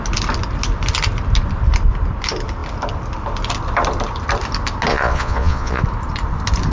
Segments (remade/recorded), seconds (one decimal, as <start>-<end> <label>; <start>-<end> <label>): 0.0-4.9 recorded; 4.9-5.8 remade; 5.8-6.7 recorded